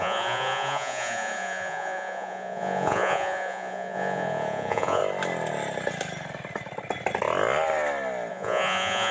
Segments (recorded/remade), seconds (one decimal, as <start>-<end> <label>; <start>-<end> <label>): 0.0-5.0 remade; 5.0-8.3 recorded; 8.3-9.1 remade